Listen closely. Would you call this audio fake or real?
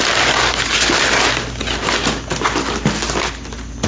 real